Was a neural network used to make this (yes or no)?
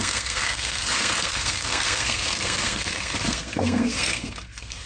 yes